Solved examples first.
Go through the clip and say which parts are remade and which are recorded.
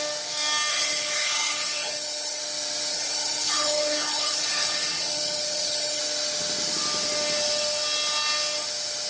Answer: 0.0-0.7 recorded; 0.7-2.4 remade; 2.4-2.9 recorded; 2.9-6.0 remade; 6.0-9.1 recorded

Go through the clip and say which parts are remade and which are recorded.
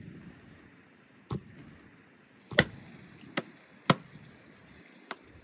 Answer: 0.0-1.4 remade; 1.4-4.6 recorded; 4.6-5.4 remade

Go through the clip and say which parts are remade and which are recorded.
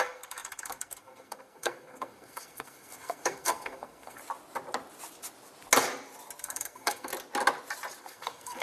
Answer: 0.0-4.2 remade; 4.2-6.4 recorded; 6.4-7.1 remade; 7.1-8.0 recorded; 8.0-8.6 remade